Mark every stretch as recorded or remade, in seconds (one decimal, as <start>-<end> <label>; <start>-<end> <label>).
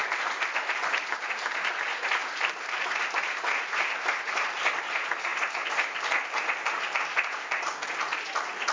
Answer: 0.0-2.2 recorded; 2.2-2.9 remade; 2.9-8.7 recorded